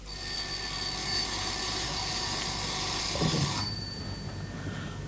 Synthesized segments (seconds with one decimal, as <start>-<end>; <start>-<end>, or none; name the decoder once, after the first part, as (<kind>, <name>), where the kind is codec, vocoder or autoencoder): 1.0-4.0 (vocoder, BigVGAN v2)